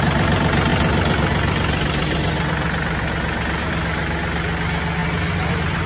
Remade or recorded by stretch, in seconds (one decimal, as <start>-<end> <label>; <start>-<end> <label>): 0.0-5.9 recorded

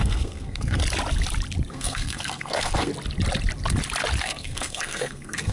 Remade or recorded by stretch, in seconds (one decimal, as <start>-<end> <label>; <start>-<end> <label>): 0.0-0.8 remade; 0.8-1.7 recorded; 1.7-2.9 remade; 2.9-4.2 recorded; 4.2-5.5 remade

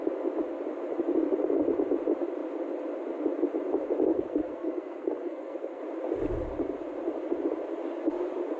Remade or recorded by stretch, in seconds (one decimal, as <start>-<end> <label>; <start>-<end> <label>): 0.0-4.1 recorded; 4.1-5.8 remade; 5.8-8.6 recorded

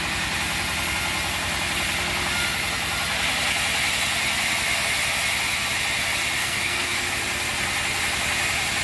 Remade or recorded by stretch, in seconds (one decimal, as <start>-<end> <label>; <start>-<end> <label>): 0.0-6.4 recorded; 6.4-7.1 remade; 7.1-8.8 recorded

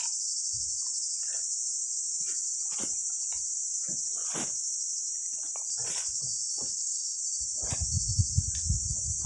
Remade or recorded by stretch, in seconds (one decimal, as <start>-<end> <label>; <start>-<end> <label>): 0.0-6.7 recorded; 6.7-7.2 remade; 7.2-9.3 recorded

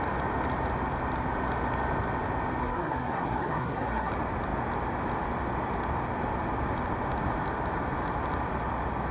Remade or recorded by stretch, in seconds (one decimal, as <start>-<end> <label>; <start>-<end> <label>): 0.0-2.6 recorded; 2.6-4.1 remade; 4.1-9.1 recorded

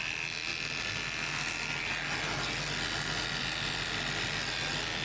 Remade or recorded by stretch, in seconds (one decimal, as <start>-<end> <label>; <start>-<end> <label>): 0.0-5.0 recorded